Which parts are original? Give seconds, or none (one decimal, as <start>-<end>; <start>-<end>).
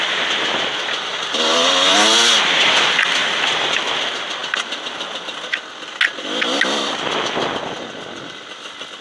0.0-9.0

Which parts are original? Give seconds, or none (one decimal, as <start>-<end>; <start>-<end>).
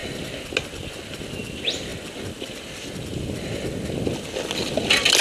0.0-5.2